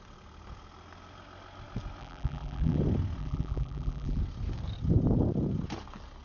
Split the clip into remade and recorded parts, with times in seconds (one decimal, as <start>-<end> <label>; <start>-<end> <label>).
0.0-2.0 recorded; 2.0-2.8 remade; 2.8-3.2 recorded; 3.2-4.2 remade; 4.2-6.2 recorded